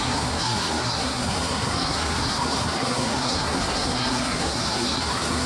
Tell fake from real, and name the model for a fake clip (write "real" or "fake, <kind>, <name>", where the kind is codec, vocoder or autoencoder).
fake, codec, SNAC